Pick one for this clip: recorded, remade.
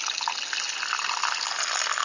recorded